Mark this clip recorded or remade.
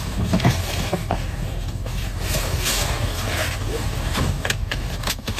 remade